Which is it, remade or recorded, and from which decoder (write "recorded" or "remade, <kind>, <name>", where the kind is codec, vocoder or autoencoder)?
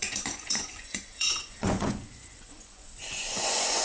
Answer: remade, vocoder, Vocos